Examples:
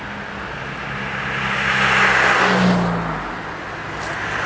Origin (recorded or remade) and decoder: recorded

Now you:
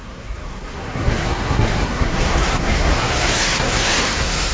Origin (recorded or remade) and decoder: remade, codec, SNAC